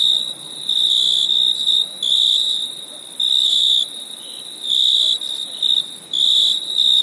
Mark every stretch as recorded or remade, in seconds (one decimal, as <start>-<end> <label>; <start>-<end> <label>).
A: 0.0-7.0 recorded